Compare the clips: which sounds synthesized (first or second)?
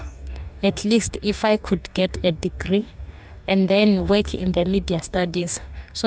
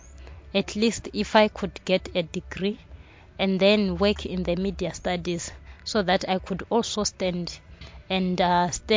first